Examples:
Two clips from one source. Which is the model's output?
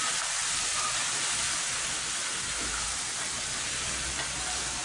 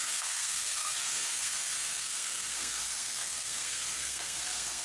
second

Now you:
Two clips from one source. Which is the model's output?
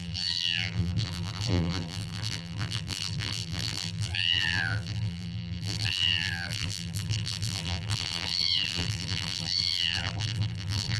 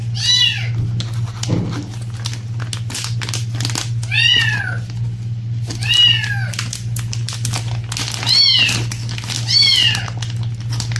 first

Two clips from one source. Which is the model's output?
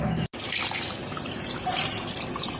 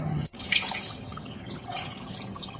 second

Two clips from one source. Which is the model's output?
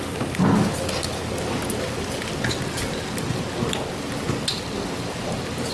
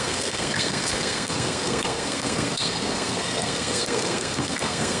second